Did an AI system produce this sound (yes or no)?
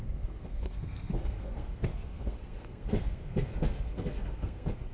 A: yes